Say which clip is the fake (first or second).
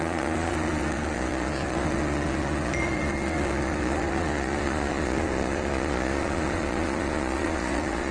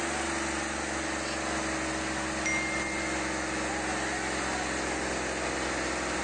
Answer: first